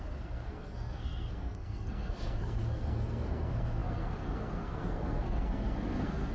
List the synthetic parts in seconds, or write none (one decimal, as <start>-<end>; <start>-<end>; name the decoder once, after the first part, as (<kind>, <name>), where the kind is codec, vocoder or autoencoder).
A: 0.0-6.3 (codec, SNAC)